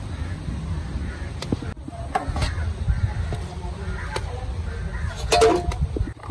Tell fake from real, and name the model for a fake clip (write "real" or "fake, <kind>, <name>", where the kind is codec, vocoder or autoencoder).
real